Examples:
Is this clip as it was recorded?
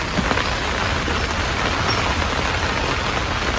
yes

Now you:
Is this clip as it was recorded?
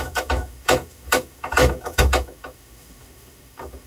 no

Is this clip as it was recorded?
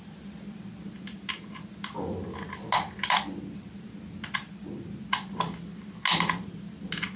yes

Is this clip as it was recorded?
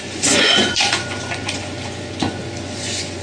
no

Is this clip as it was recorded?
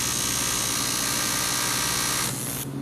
yes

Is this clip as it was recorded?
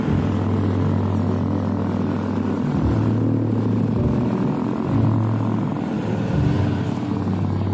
yes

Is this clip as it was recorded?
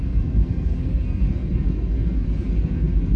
no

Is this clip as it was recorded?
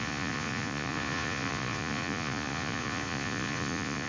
no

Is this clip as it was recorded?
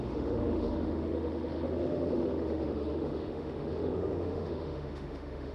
no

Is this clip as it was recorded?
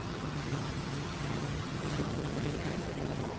no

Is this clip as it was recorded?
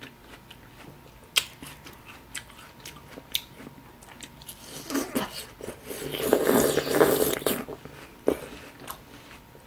yes